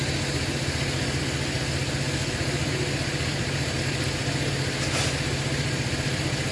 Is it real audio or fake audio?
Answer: real